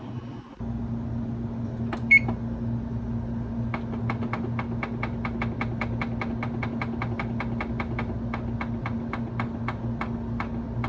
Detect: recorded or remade recorded